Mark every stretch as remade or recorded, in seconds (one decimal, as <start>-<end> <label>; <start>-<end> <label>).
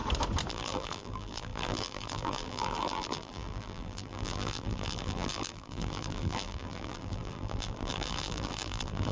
0.0-0.5 recorded; 0.5-9.1 remade